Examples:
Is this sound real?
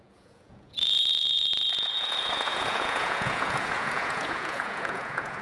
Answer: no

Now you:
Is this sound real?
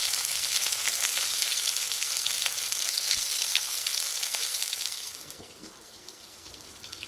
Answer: no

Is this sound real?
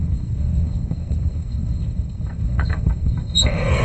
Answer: no